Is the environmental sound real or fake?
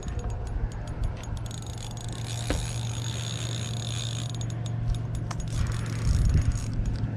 real